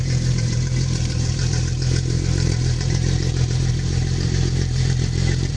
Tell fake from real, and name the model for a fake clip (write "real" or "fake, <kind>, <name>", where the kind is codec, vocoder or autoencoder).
fake, vocoder, BigVGAN v2